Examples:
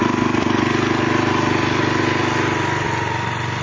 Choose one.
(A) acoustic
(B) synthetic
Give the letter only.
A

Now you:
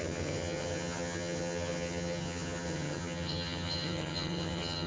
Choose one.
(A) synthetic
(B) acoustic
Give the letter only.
A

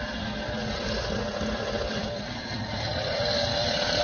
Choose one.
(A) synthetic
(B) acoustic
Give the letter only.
B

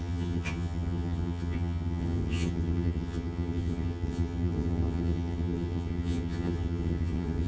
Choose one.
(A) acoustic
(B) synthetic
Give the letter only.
B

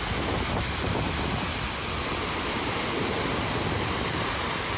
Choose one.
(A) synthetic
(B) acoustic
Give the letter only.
B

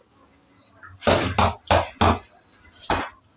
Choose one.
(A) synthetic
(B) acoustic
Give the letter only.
B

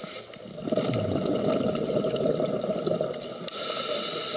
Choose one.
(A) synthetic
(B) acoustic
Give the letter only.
B